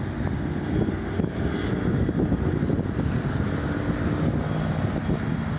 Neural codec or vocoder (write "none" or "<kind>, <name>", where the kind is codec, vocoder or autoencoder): none